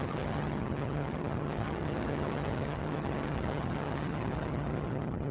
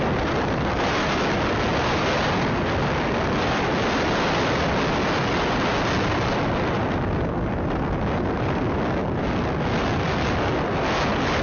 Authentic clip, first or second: second